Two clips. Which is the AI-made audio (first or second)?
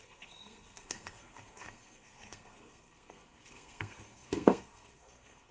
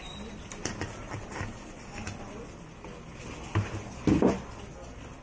first